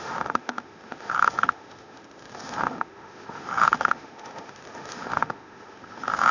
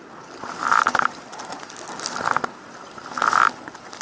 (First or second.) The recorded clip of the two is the second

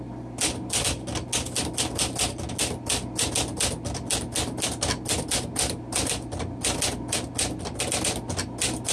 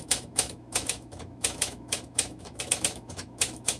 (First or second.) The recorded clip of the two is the first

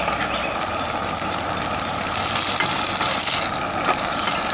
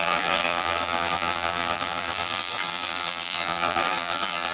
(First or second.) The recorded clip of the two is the first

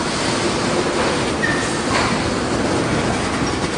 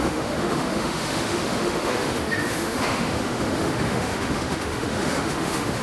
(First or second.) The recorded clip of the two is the first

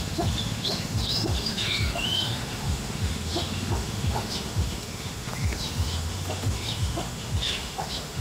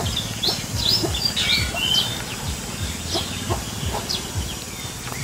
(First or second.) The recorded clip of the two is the second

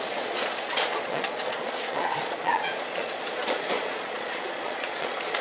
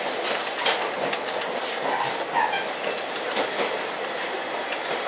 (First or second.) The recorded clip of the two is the second